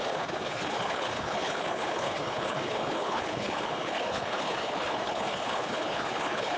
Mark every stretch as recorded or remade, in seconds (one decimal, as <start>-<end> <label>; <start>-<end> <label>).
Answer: 0.0-6.6 remade